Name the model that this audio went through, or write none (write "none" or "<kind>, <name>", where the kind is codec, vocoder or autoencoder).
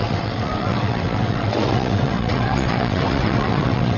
vocoder, WaveNeXt